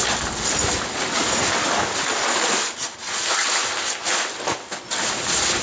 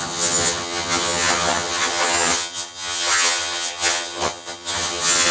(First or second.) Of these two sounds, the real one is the first